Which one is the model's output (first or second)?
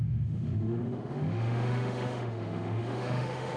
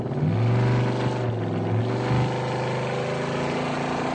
first